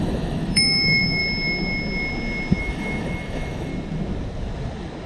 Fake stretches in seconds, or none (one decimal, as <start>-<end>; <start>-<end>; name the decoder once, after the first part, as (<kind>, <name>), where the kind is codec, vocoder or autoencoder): 0.0-1.2 (autoencoder, DAC-VAE); 2.6-3.7